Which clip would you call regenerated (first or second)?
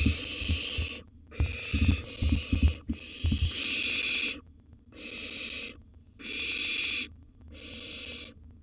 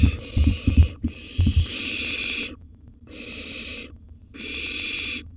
second